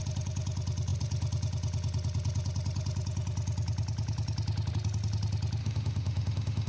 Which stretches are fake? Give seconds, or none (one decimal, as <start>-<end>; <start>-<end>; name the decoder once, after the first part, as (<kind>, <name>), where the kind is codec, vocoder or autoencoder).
5.6-6.7 (autoencoder, DAC-VAE)